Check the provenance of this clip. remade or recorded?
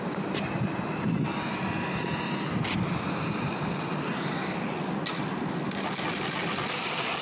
recorded